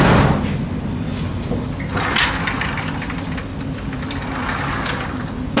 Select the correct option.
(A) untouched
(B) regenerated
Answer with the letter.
A